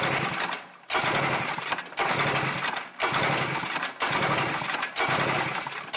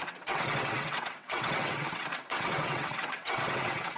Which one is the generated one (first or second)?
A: second